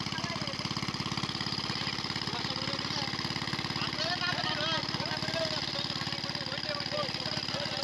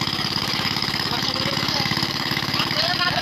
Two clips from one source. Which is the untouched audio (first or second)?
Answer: first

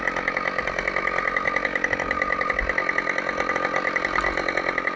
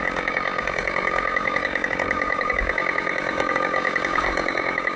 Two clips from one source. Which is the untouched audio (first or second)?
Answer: first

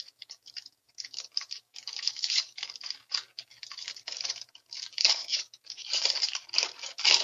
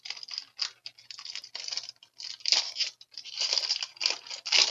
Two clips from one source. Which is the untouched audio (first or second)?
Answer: second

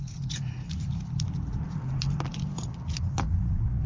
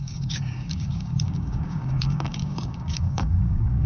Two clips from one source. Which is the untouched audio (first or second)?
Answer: first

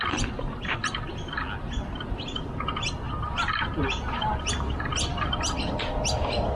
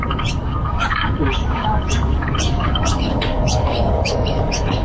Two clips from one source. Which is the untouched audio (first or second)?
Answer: first